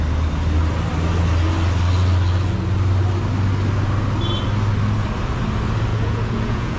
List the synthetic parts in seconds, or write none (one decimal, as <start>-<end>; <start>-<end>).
5.9-6.8